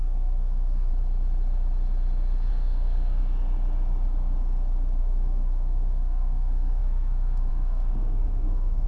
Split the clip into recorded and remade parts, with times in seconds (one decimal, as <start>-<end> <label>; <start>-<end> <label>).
0.0-0.9 remade; 0.9-2.5 recorded; 2.5-3.2 remade; 3.2-5.0 recorded; 5.0-8.9 remade